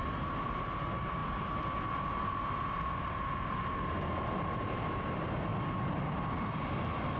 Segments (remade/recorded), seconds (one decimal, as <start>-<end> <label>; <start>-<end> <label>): 0.0-7.2 recorded